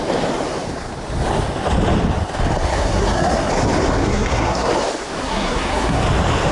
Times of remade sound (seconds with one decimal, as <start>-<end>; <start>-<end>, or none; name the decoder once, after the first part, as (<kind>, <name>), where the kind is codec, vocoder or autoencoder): 2.7-3.5 (codec, SNAC); 4.0-4.7; 5.2-6.0